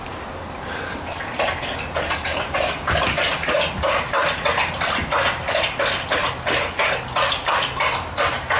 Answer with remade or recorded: recorded